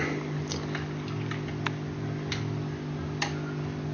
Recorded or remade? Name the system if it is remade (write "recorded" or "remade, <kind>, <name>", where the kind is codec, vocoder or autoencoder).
recorded